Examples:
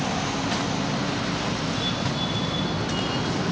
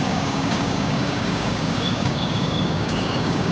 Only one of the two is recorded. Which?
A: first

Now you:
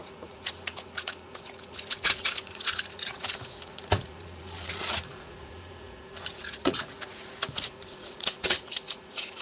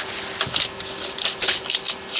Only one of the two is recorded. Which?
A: second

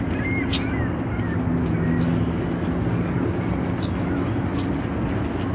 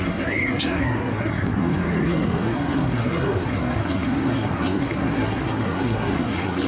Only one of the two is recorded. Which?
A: first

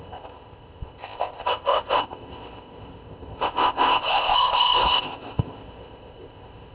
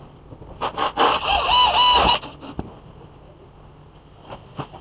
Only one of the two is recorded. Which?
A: second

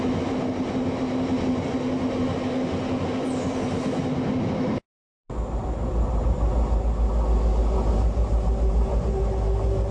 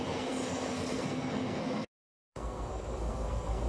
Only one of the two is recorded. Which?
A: first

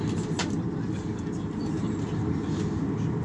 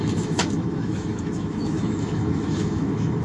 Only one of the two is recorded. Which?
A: first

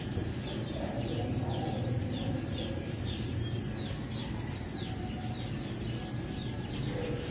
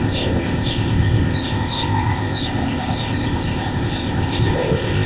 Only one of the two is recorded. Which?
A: first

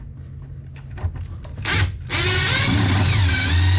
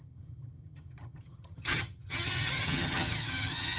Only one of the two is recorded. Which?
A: first